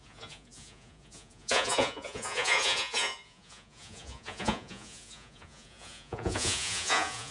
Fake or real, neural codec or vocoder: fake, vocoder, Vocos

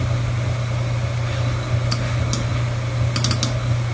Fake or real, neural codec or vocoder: real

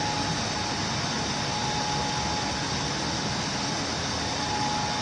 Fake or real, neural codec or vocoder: real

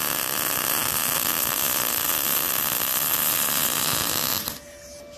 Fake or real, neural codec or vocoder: real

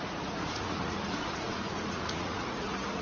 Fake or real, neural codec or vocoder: fake, vocoder, Vocos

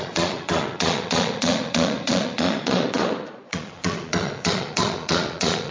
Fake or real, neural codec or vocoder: fake, vocoder, Vocos